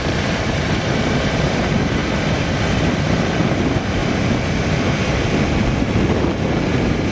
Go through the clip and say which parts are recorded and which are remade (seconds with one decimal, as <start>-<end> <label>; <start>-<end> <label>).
0.0-2.0 remade; 2.0-3.5 recorded; 3.5-4.0 remade; 4.0-7.1 recorded